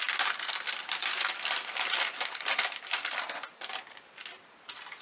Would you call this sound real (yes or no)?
yes